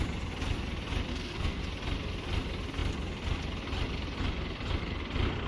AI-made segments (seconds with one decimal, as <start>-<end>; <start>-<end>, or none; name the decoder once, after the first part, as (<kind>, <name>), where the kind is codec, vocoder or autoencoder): 1.1-1.6 (codec, SNAC)